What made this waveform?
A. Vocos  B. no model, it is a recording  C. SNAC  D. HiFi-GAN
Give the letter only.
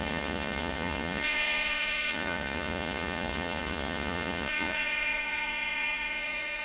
A